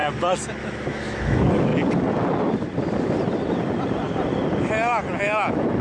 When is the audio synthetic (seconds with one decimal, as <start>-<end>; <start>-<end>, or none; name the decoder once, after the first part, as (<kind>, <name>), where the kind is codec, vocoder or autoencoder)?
0.6-1.7 (autoencoder, DAC-VAE); 5.2-5.8